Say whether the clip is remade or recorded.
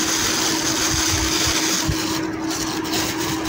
recorded